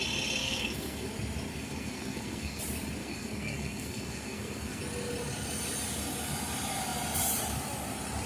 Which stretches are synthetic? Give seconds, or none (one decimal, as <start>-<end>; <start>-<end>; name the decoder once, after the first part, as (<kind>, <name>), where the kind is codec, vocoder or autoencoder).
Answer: 0.4-1.1 (codec, SNAC); 1.5-2.6; 3.0-4.8